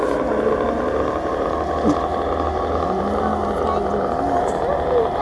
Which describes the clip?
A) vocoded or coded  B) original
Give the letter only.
B